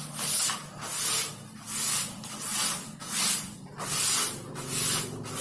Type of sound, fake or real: real